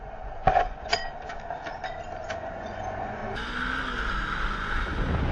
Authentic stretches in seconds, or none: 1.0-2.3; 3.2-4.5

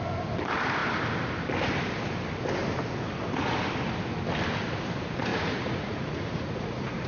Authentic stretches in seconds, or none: 0.0-5.3

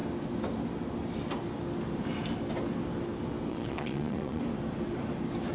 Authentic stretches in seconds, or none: 0.0-3.5; 4.4-5.5

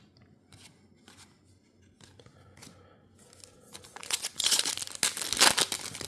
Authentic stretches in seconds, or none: 0.0-4.0; 4.7-6.1